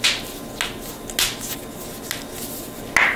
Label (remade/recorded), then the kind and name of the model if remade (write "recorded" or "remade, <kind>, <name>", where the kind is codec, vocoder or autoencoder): recorded